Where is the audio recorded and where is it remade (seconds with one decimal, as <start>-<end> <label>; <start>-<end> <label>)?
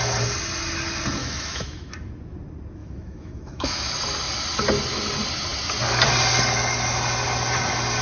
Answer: 0.0-1.2 recorded; 1.2-1.9 remade; 1.9-2.8 recorded; 2.8-3.9 remade; 3.9-8.0 recorded